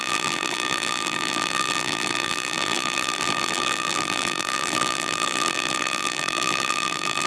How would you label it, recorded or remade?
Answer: remade